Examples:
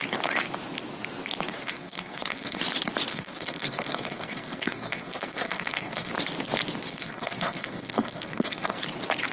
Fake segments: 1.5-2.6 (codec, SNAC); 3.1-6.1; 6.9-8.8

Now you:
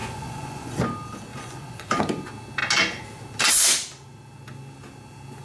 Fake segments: 0.0-0.8 (vocoder, Vocos); 1.3-2.0

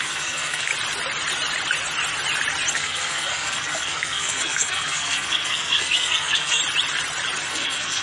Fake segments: 0.0-0.7 (codec, SNAC); 2.7-6.6; 7.5-8.0

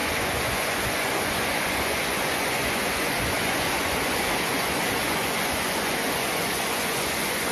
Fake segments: 0.0-7.5 (vocoder, Vocos)

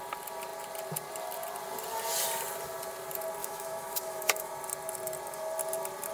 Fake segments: 3.4-4.5 (autoencoder, DAC-VAE)